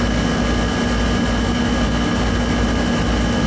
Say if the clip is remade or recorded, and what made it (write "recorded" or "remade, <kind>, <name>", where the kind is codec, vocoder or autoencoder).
recorded